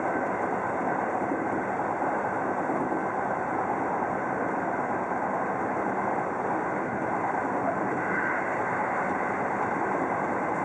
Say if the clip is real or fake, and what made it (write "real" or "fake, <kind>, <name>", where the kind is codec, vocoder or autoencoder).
real